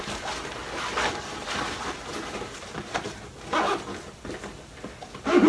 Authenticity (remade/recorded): recorded